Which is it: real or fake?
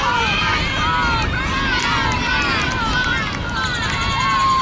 real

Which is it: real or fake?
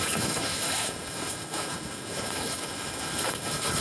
fake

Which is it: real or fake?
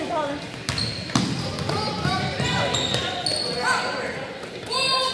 real